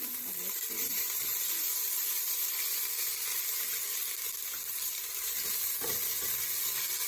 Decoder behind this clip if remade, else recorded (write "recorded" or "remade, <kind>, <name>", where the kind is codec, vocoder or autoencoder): remade, vocoder, BigVGAN v2